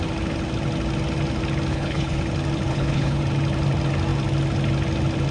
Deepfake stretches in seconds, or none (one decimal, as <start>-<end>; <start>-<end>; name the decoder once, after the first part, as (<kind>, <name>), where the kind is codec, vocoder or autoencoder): 1.7-2.2 (codec, HILCodec); 2.7-3.2

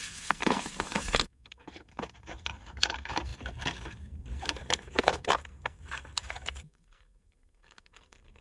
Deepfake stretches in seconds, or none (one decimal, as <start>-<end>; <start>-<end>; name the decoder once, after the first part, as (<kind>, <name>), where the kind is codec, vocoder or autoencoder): 0.0-8.4 (codec, SNAC)

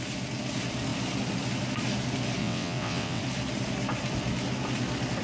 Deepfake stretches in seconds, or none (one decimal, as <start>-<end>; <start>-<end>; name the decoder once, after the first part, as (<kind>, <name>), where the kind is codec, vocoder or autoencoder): 2.4-3.2 (vocoder, WaveNeXt)

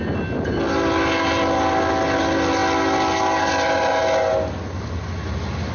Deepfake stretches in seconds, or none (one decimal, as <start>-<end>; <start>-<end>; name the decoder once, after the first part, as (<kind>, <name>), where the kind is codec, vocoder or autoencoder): none